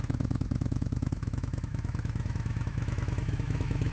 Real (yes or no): no